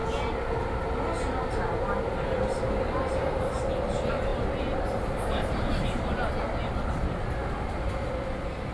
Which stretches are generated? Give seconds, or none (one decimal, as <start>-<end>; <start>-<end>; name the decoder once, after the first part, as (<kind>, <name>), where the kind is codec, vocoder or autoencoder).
none

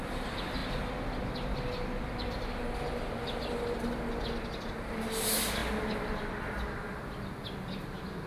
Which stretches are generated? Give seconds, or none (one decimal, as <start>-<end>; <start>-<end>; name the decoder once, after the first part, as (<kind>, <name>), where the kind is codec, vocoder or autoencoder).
none

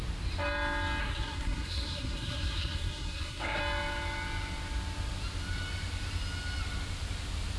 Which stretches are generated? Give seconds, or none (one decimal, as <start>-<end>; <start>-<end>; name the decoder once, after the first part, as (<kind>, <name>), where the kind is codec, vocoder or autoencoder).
1.0-3.6 (codec, SNAC)

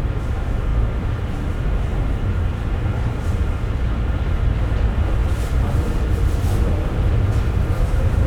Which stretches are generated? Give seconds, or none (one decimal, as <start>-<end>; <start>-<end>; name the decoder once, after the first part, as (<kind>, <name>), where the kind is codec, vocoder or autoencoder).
none